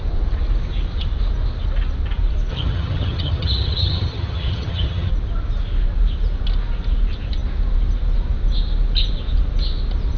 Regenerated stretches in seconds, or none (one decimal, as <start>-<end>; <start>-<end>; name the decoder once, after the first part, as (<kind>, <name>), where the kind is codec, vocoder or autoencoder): 2.5-5.1 (vocoder, HiFi-GAN)